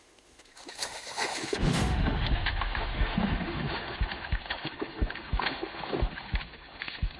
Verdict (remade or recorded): remade